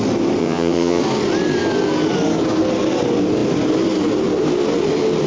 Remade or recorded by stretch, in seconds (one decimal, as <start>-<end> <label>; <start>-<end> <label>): 0.0-0.4 recorded; 0.4-1.0 remade; 1.0-5.3 recorded